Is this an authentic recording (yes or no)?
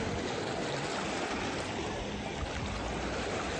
yes